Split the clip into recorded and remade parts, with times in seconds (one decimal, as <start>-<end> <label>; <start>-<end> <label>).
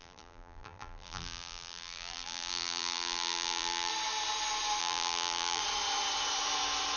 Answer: 0.0-3.9 remade; 3.9-4.8 recorded; 4.8-5.6 remade; 5.6-7.0 recorded